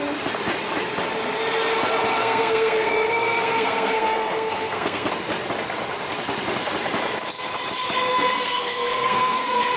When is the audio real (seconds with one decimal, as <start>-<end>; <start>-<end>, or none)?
0.0-2.2; 5.1-8.1